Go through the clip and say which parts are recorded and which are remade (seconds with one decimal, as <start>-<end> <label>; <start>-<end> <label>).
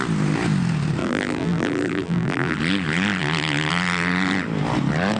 0.0-1.0 recorded; 1.0-2.6 remade; 2.6-5.2 recorded